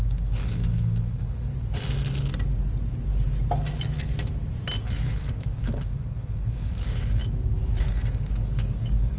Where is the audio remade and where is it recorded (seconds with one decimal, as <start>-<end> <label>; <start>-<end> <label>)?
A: 0.0-1.5 remade; 1.5-4.8 recorded; 4.8-7.2 remade; 7.2-7.8 recorded; 7.8-9.2 remade